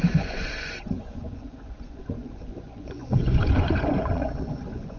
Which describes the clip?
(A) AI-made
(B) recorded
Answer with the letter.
A